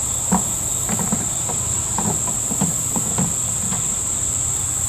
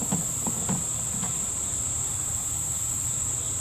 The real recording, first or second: first